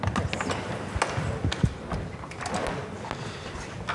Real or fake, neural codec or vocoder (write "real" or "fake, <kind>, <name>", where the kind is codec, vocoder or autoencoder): real